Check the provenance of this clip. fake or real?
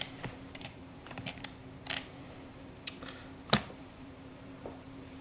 fake